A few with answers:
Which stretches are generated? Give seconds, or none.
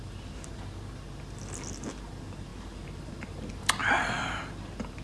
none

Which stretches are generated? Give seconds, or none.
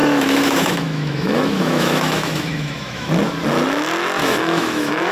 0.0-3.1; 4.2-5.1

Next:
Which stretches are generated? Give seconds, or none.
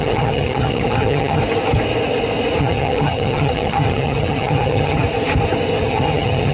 0.0-1.4; 2.6-5.0; 5.8-6.5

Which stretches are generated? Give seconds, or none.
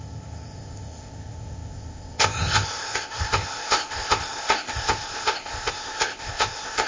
0.0-6.9